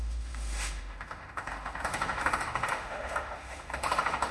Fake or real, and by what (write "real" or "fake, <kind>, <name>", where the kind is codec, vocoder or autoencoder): fake, autoencoder, DAC-VAE